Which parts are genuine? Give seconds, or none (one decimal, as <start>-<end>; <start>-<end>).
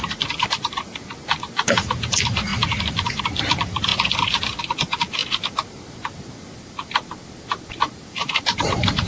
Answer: 3.9-4.6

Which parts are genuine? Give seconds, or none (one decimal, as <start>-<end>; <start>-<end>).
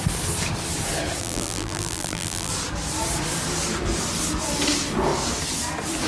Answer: 0.0-1.2; 2.5-6.1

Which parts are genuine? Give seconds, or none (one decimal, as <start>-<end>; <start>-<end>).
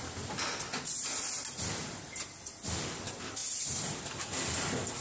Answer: 0.0-5.0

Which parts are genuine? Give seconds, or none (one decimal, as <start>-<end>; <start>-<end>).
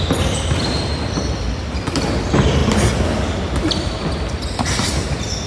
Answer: 0.0-5.5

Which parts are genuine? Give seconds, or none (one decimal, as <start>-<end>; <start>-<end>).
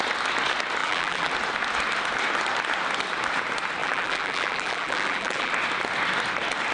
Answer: 0.0-0.8; 1.3-3.8; 5.5-6.7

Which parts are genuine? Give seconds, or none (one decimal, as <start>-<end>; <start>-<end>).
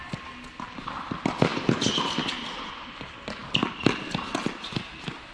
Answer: 0.0-1.5; 2.7-5.3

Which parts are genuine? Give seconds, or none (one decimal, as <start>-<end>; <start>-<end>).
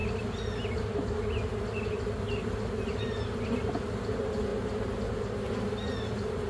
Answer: 0.0-6.5